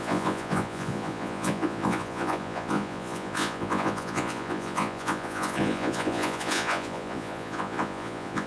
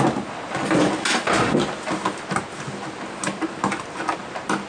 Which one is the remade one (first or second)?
first